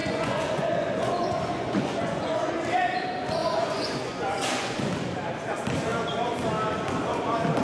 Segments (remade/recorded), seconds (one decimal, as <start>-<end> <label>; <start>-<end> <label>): 0.0-2.5 remade; 2.5-3.4 recorded; 3.4-4.9 remade; 4.9-7.6 recorded